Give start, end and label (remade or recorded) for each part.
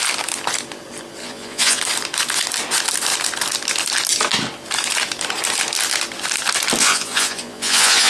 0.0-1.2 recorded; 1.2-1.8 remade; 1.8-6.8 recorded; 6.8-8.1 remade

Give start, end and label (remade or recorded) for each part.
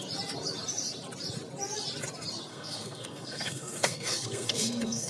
0.0-2.5 recorded; 2.5-5.1 remade